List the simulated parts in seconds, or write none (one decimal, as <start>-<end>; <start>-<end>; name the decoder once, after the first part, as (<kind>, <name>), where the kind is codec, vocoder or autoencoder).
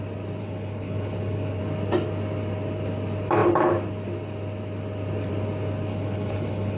0.4-1.6 (codec, HILCodec); 5.9-6.8